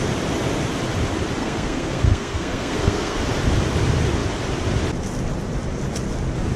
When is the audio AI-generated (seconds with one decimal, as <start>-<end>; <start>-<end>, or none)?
1.4-3.2